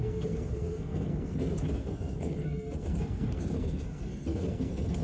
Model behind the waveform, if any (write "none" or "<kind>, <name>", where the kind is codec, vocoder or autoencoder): codec, SNAC